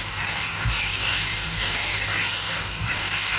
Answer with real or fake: fake